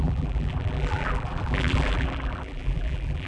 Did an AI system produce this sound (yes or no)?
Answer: yes